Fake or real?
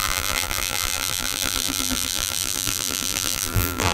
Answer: fake